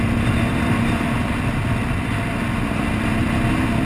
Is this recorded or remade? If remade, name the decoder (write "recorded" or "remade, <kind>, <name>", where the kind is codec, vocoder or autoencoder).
recorded